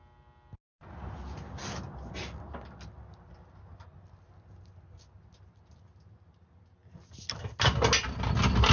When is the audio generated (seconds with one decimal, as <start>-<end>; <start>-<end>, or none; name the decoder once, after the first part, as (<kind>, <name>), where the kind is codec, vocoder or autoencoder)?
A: none